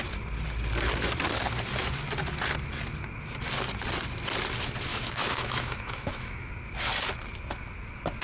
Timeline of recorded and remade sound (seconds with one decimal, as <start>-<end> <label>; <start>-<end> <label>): 0.0-4.9 recorded; 4.9-6.5 remade; 6.5-8.2 recorded